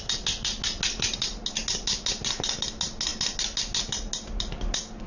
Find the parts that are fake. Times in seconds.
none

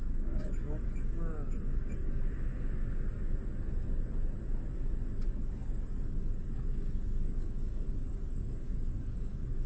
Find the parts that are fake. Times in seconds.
0.0-2.2 (codec, DAC); 5.3-9.7

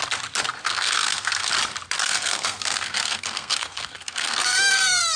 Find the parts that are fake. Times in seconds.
0.6-1.5 (codec, SNAC); 2.0-5.2

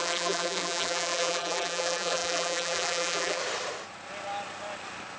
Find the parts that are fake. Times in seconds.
0.0-3.4 (vocoder, BigVGAN v2)

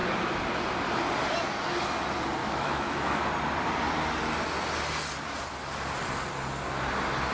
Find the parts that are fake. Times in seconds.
2.4-3.2 (autoencoder, DAC-VAE)

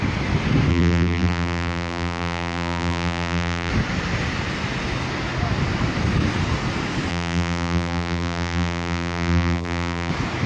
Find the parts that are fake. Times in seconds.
0.7-3.7 (vocoder, BigVGAN v2); 7.1-10.1